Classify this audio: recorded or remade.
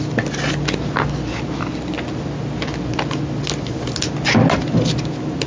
recorded